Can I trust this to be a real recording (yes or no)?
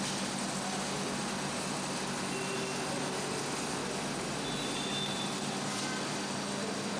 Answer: yes